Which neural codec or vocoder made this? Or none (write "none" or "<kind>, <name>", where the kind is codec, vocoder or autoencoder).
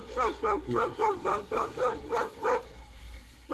codec, SNAC